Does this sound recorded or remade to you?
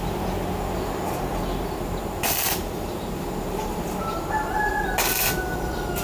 recorded